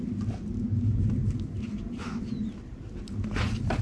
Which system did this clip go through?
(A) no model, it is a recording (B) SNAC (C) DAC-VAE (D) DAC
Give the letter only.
A